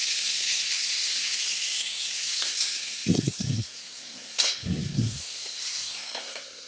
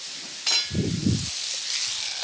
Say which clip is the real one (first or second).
second